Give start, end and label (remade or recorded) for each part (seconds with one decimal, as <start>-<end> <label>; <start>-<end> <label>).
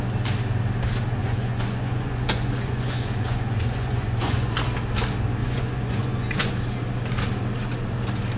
0.0-1.2 recorded; 1.2-4.5 remade; 4.5-5.4 recorded; 5.4-6.5 remade; 6.5-8.4 recorded